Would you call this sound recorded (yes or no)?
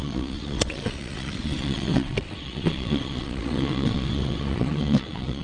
no